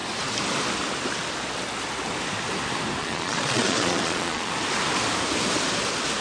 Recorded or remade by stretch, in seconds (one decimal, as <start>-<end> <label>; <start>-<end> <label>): 0.0-3.0 recorded; 3.0-4.5 remade; 4.5-6.2 recorded